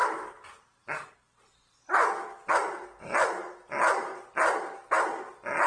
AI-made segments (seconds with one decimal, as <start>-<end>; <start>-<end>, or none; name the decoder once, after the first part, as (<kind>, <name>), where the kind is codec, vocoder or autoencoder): none